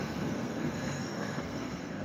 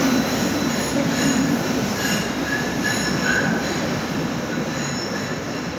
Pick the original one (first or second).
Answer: second